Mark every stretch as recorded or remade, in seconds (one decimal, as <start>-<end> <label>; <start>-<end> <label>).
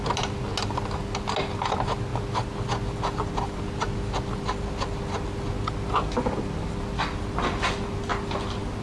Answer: 0.0-8.8 recorded